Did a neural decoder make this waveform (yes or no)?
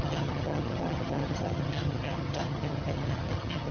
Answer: yes